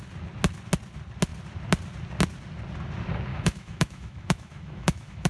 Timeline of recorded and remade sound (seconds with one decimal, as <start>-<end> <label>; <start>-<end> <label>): 0.0-3.3 recorded; 3.3-5.3 remade